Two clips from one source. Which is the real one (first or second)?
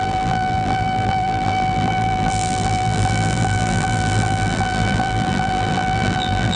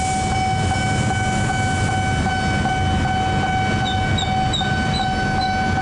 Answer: second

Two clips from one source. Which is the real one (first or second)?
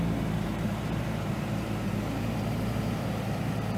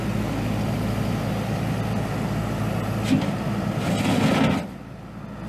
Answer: second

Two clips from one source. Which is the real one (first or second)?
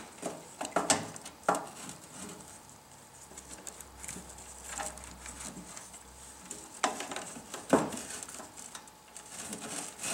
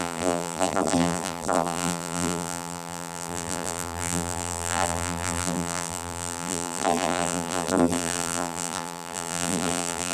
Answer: first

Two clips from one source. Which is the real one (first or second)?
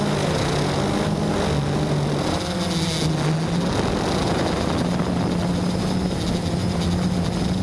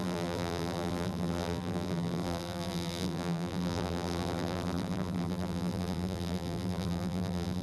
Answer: first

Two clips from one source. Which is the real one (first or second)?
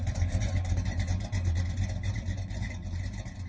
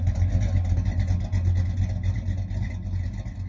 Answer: second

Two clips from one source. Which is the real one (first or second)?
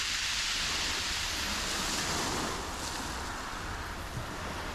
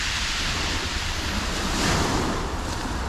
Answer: first